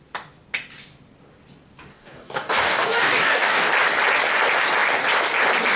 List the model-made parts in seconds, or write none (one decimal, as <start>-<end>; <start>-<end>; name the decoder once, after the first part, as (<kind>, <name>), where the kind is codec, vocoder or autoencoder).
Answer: 1.9-3.7 (codec, DAC)